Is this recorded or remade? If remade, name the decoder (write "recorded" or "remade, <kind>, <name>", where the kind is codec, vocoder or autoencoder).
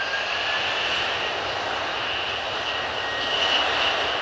recorded